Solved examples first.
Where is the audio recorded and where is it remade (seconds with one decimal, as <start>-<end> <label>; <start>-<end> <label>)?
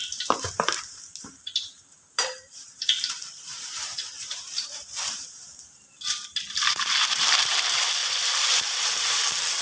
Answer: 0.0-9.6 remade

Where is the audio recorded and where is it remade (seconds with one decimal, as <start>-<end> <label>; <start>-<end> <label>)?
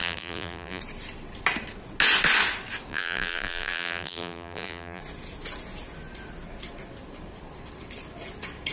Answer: 0.0-0.8 remade; 0.8-2.9 recorded; 2.9-5.0 remade; 5.0-8.7 recorded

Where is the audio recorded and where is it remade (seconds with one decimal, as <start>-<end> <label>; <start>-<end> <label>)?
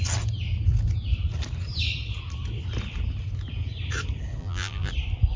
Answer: 0.0-4.4 recorded; 4.4-4.9 remade; 4.9-5.4 recorded